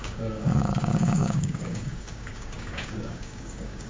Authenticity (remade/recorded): remade